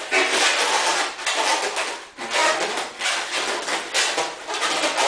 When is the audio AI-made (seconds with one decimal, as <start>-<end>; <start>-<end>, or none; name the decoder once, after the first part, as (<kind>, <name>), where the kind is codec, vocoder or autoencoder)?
none